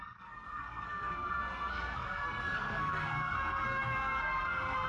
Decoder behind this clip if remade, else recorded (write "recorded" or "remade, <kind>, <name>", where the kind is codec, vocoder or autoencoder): remade, codec, SNAC